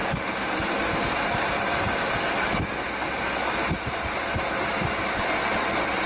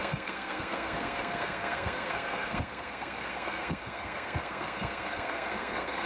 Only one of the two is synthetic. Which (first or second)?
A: second